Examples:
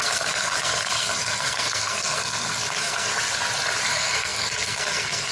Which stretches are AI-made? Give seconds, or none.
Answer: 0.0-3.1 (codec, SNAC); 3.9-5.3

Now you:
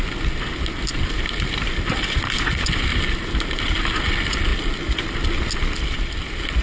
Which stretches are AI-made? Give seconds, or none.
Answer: none